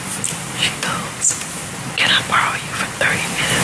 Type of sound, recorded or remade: recorded